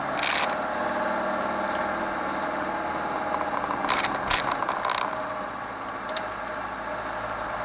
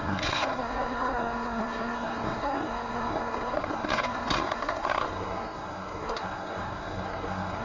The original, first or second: first